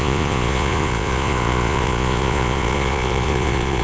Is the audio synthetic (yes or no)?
yes